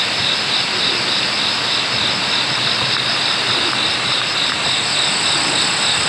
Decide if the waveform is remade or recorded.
recorded